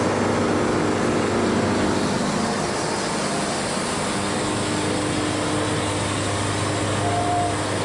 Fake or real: real